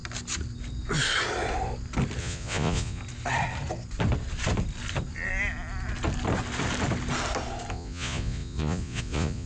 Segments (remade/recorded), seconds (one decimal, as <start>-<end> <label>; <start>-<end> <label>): 0.0-2.2 recorded; 2.2-3.0 remade; 3.0-7.7 recorded; 7.7-9.5 remade